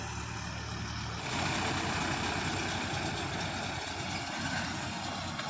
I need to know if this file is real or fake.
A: real